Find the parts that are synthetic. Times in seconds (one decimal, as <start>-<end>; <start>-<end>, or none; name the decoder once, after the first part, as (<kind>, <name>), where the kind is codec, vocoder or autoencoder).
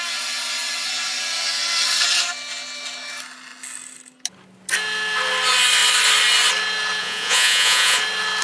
7.0-8.0 (vocoder, Vocos)